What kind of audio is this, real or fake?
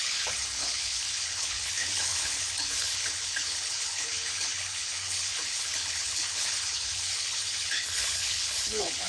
fake